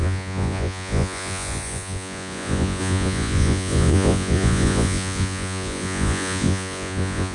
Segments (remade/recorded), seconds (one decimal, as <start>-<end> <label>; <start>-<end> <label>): 0.0-7.3 remade